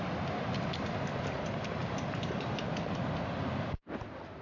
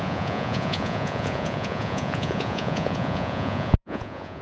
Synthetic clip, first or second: second